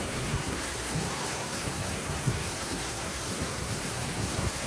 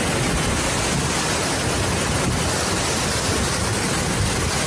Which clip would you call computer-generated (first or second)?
first